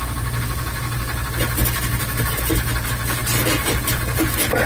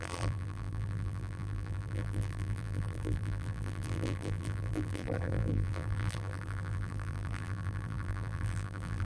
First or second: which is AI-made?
second